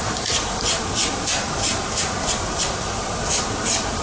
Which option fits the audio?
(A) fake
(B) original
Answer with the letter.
A